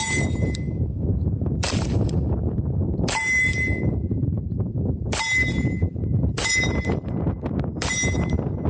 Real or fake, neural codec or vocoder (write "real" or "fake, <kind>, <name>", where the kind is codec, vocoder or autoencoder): fake, vocoder, BigVGAN v2